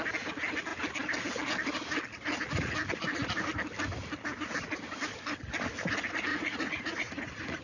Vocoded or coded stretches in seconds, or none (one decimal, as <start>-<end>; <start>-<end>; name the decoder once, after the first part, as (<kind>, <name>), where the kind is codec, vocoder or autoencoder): 6.3-7.6 (vocoder, Vocos)